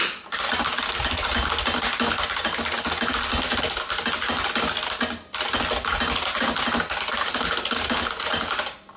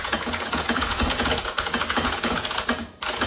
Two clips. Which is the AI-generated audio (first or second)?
second